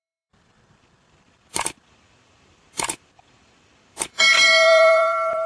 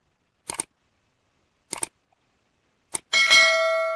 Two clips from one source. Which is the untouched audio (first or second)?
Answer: second